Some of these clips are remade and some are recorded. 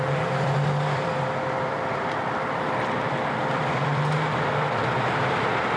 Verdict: remade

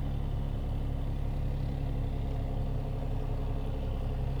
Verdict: recorded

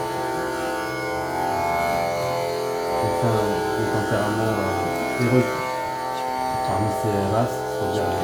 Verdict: recorded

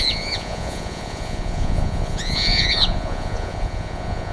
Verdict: remade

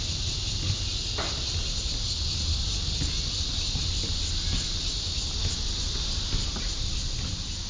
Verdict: recorded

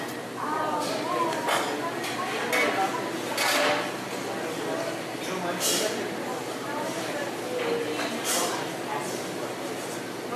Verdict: recorded